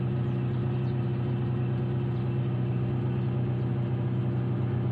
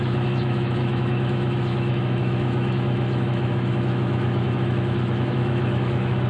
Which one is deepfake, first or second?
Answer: second